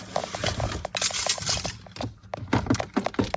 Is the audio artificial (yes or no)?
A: no